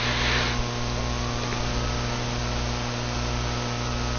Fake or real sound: real